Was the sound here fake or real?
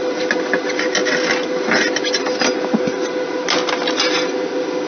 real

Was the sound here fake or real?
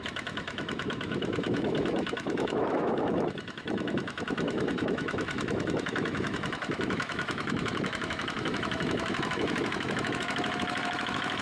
fake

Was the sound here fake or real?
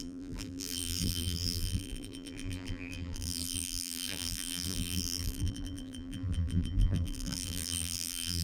fake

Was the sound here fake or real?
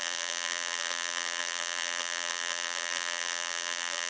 fake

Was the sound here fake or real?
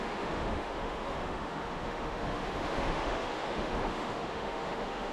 fake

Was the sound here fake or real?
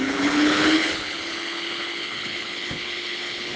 fake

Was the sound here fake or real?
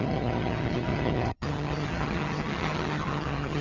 fake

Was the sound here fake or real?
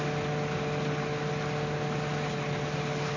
real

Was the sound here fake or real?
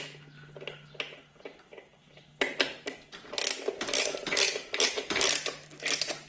real